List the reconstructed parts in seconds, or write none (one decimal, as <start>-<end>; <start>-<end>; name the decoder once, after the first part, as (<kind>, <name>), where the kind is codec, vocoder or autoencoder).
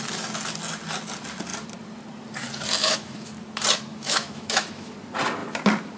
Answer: 2.8-3.3 (autoencoder, DAC-VAE); 3.9-4.9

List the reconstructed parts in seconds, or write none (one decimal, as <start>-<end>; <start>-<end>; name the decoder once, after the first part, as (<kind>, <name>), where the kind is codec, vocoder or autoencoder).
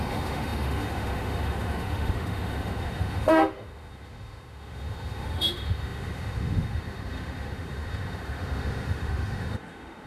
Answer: 0.0-10.1 (autoencoder, DAC-VAE)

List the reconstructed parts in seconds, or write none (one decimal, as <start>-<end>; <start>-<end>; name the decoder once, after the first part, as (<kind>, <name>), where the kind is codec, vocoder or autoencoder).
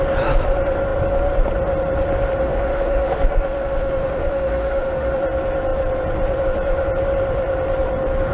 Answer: 2.4-5.2 (autoencoder, DAC-VAE)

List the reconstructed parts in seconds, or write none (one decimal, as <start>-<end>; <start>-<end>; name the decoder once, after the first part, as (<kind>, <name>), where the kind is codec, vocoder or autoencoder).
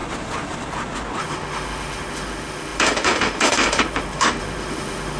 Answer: 1.2-5.2 (autoencoder, DAC-VAE)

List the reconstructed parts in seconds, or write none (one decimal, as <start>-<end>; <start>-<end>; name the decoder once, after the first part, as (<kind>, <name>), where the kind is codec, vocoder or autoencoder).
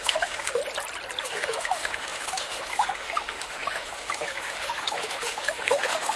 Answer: 0.0-0.6 (autoencoder, DAC-VAE); 1.2-6.2